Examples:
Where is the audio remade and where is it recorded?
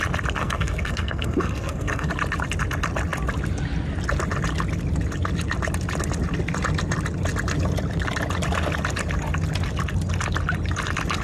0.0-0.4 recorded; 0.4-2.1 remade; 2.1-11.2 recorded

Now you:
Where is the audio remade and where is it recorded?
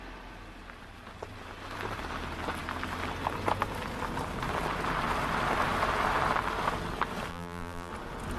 0.0-7.3 recorded; 7.3-7.9 remade; 7.9-8.4 recorded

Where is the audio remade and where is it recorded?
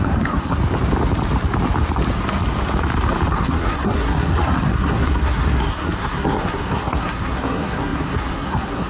0.0-0.6 remade; 0.6-3.3 recorded; 3.3-8.9 remade